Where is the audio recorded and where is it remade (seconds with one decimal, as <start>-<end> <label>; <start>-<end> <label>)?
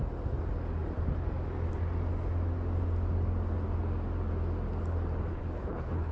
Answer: 0.0-5.3 recorded; 5.3-6.1 remade